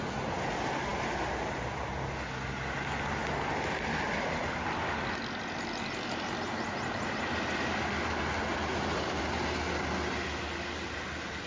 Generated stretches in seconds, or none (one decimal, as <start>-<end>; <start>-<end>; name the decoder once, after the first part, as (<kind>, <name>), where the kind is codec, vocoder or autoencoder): 4.4-7.2 (vocoder, BigVGAN v2)